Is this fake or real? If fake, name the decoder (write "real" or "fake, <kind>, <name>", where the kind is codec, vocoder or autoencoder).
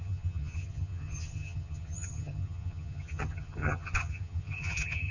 fake, vocoder, HiFi-GAN